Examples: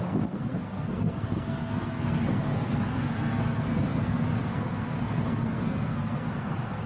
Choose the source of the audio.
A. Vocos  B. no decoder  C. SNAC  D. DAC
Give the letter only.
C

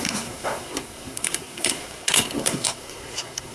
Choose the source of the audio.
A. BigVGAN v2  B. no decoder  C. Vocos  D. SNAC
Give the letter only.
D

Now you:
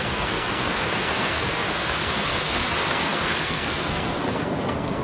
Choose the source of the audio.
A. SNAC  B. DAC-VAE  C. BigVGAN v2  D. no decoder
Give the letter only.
A